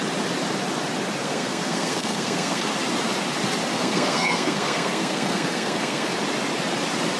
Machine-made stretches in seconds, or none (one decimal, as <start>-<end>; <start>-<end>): 1.2-2.7; 3.7-6.1